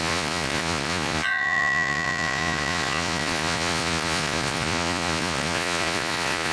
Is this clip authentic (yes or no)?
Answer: no